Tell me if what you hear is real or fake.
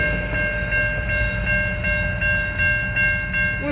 real